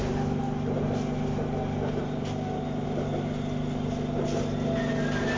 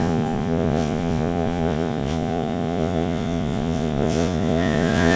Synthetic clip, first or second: second